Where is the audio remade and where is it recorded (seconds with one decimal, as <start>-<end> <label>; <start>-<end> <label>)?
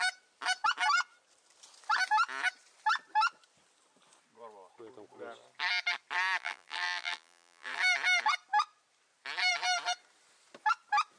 0.0-6.4 recorded; 6.4-7.8 remade; 7.8-11.2 recorded